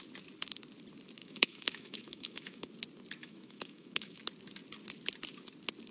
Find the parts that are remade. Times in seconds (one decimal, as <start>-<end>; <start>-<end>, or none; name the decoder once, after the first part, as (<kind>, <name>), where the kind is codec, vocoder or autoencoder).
1.2-2.7 (autoencoder, DAC-VAE); 3.2-4.2